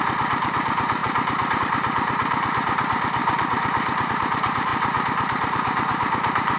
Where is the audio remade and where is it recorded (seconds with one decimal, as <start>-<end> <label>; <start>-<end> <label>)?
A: 0.0-6.6 remade